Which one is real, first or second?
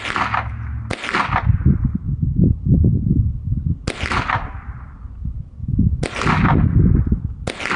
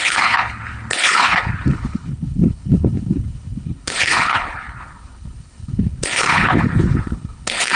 first